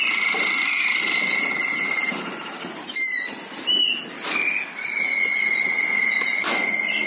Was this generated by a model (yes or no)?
no